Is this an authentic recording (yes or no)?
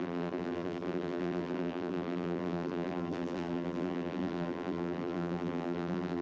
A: no